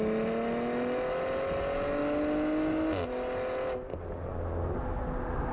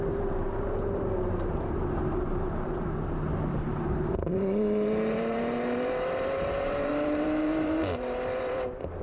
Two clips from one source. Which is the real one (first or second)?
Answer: first